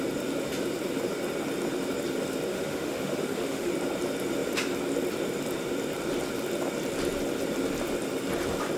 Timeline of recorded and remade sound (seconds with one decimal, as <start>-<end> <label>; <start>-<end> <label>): 0.0-2.5 recorded; 2.5-3.7 remade; 3.7-8.8 recorded